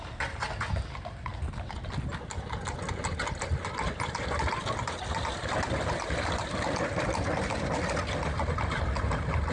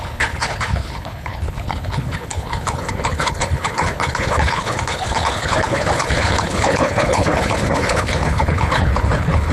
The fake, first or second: second